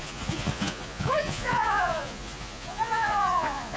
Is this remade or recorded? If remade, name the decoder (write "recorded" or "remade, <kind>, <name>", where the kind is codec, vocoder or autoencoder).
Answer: remade, vocoder, Vocos